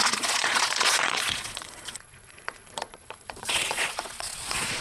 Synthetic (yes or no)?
yes